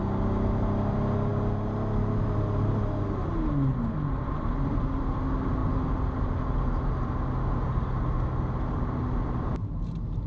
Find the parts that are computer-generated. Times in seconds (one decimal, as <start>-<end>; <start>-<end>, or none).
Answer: none